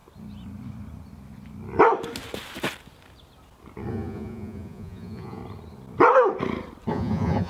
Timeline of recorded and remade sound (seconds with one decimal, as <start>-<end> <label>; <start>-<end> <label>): 0.0-3.9 recorded; 3.9-5.4 remade; 5.4-6.9 recorded; 6.9-7.5 remade